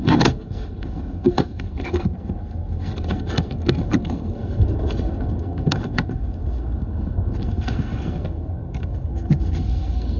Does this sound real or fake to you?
fake